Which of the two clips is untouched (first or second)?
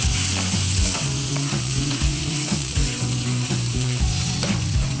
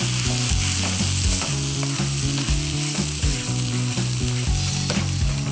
second